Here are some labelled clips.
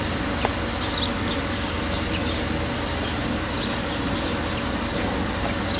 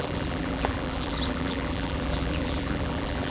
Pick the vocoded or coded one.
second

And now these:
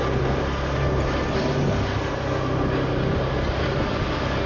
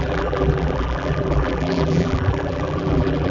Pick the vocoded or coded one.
second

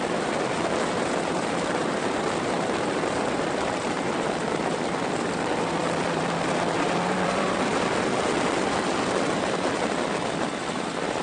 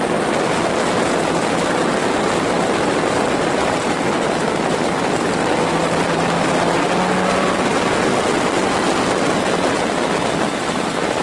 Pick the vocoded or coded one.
first